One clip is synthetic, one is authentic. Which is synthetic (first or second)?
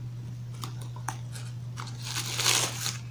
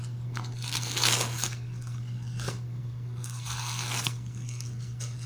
second